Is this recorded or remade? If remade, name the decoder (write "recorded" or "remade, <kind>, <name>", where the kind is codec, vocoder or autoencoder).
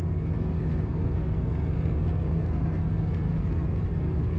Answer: remade, codec, SNAC